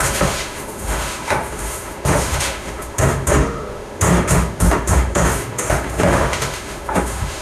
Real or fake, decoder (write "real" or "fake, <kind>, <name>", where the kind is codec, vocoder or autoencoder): fake, autoencoder, DAC-VAE